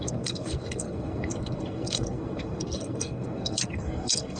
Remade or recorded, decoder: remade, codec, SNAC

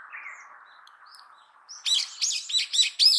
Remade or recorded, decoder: recorded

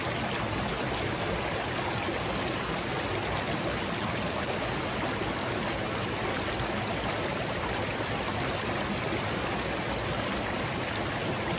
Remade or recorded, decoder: recorded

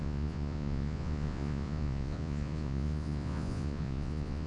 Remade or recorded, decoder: remade, vocoder, Vocos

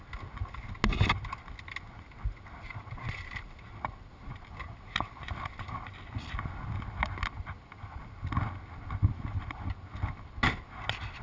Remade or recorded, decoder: recorded